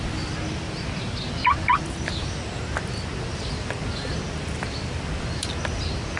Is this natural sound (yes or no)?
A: yes